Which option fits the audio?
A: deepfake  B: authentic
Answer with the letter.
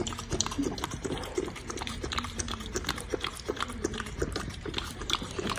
A